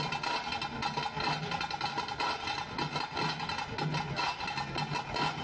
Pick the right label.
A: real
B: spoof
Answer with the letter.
A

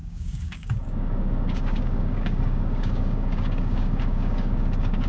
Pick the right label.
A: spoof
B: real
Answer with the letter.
A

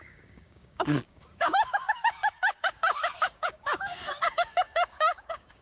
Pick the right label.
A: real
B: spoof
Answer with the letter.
B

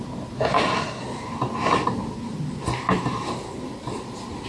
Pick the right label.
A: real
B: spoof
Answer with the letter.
A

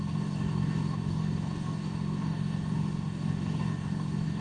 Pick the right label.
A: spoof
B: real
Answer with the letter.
A